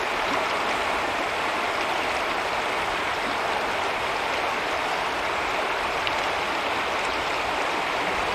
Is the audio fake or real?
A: real